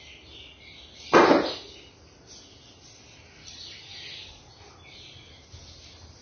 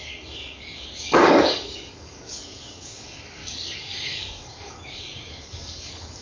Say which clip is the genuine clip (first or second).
first